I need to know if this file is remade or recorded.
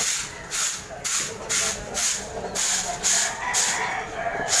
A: recorded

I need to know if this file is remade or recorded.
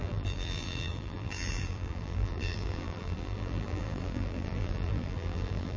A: remade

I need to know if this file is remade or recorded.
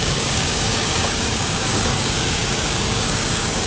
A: remade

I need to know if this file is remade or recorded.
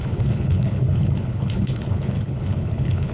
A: remade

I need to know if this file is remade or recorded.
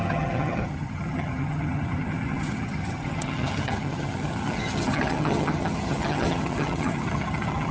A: remade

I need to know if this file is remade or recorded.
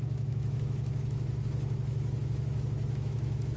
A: remade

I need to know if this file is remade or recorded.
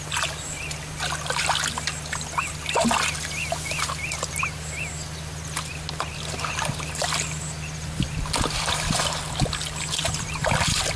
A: recorded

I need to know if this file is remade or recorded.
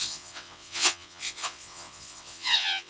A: remade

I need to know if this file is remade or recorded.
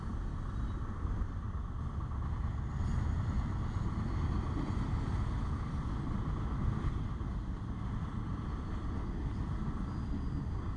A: recorded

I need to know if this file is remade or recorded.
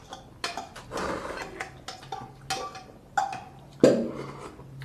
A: recorded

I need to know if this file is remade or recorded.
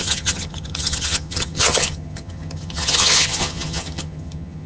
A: remade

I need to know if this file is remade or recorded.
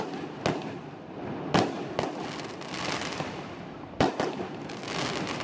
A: recorded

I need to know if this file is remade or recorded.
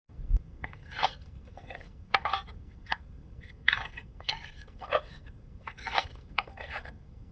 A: remade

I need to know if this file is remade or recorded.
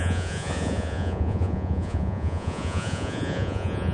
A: remade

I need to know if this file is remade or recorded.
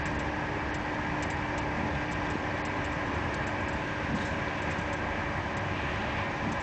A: recorded